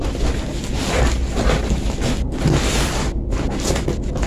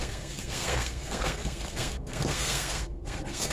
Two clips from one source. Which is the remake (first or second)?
second